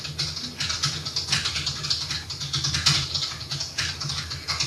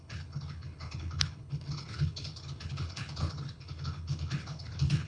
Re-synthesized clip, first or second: second